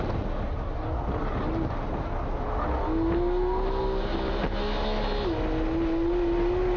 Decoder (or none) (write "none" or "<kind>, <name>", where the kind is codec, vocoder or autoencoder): none